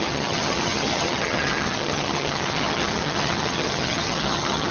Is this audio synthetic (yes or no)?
yes